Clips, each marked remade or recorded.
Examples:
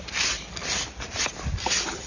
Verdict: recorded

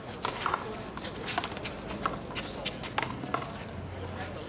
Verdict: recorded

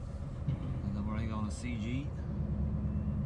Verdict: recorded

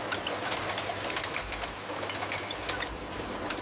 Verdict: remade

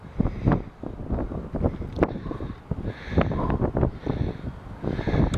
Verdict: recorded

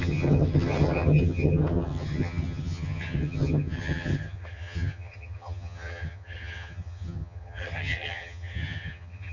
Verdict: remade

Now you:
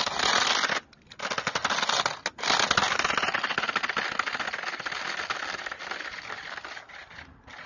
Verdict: recorded